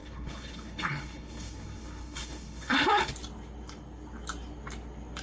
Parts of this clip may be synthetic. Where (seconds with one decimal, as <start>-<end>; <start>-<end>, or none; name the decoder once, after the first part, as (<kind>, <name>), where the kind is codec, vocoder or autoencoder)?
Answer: 0.0-3.1 (codec, HILCodec)

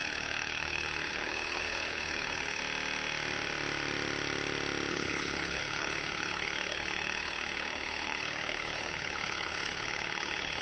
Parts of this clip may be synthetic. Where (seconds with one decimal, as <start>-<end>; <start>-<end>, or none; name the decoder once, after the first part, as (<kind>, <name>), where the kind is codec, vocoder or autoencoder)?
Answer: 0.0-2.6 (codec, HILCodec); 4.9-10.6

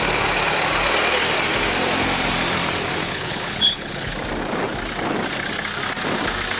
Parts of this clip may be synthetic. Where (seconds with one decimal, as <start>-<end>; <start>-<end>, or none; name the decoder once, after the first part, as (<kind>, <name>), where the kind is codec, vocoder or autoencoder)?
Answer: 3.0-4.1 (codec, HILCodec)

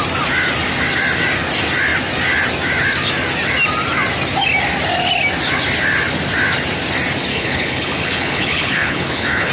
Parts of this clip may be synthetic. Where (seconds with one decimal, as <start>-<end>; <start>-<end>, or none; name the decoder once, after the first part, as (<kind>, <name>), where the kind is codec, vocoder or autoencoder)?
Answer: 7.3-9.5 (codec, HILCodec)